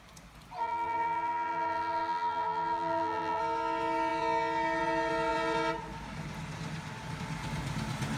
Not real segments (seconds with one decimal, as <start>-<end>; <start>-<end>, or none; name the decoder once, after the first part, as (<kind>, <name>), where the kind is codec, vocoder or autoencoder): 0.6-3.4 (vocoder, BigVGAN v2)